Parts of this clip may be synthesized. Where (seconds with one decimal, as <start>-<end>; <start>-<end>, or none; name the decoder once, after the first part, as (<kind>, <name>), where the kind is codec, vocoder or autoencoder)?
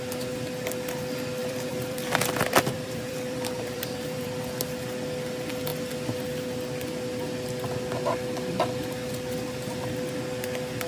1.4-4.4 (vocoder, BigVGAN v2)